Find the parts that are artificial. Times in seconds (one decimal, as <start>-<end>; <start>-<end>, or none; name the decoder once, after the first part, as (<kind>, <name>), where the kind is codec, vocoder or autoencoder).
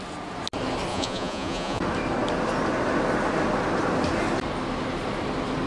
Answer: 0.9-1.8 (vocoder, Vocos)